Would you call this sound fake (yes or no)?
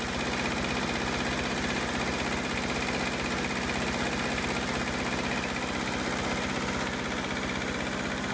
no